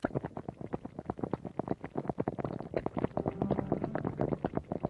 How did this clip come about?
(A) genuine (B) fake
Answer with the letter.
A